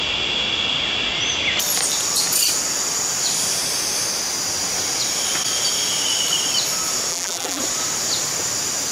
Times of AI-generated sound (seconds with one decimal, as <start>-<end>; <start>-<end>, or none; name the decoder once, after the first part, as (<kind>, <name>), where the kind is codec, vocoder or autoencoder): 7.1-7.6 (vocoder, BigVGAN v2)